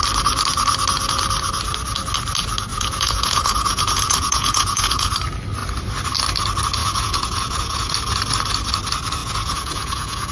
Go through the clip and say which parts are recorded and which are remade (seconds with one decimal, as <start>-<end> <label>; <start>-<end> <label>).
0.0-2.7 recorded; 2.7-5.1 remade; 5.1-6.8 recorded; 6.8-7.9 remade; 7.9-9.2 recorded; 9.2-10.3 remade